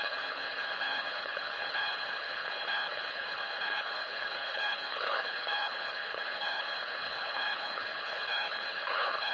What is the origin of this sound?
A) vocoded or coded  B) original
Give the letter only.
A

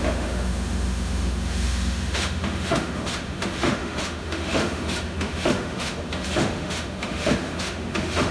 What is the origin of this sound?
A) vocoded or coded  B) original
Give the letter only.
A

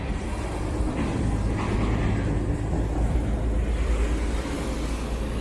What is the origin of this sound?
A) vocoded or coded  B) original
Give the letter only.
B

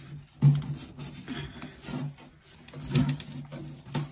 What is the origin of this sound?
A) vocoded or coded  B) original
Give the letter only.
B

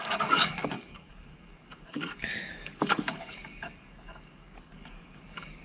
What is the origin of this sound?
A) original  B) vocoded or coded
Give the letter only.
B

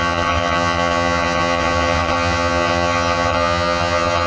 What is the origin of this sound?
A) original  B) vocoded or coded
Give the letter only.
B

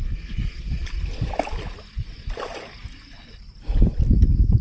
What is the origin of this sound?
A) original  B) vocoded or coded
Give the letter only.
A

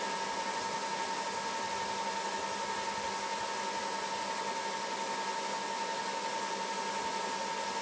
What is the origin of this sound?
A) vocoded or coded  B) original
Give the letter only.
B